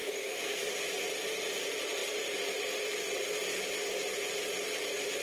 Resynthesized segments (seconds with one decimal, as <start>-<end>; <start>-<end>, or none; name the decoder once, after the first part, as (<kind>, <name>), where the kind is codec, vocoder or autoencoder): 0.0-0.7 (codec, SNAC)